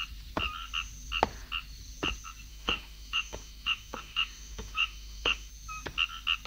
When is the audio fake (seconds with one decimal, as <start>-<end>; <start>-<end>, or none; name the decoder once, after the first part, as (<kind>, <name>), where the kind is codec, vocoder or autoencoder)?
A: 2.5-5.5 (autoencoder, DAC-VAE)